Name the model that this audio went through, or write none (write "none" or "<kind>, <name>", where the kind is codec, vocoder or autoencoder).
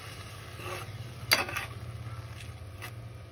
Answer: none